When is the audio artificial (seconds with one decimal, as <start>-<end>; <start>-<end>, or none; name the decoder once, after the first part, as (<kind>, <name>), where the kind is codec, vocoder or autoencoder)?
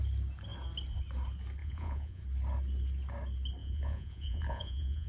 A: 1.6-2.2 (vocoder, Vocos); 3.6-5.1